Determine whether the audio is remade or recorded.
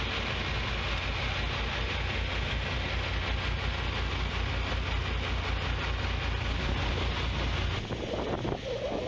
recorded